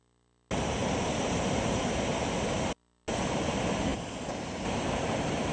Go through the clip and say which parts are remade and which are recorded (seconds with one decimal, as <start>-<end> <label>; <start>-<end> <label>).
0.0-5.5 recorded